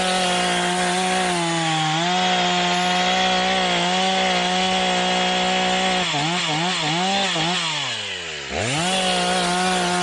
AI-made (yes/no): no